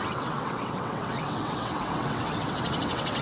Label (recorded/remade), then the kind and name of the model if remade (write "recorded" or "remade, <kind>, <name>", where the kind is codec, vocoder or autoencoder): remade, vocoder, WaveNeXt